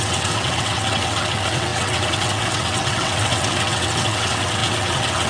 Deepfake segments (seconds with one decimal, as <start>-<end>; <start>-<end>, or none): 0.0-5.3